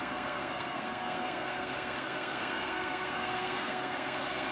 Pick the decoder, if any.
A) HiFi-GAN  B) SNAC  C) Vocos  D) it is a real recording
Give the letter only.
B